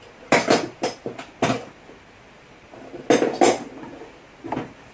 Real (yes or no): yes